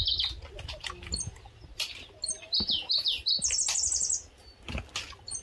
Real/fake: real